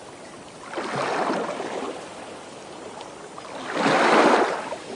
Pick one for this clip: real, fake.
real